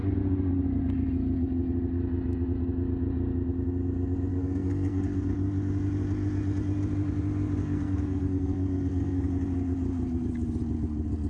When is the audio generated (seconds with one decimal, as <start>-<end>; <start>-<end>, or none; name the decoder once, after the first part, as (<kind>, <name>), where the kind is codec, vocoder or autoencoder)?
4.3-5.3 (codec, SNAC); 7.6-9.3